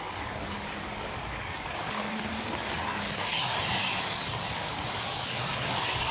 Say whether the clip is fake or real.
fake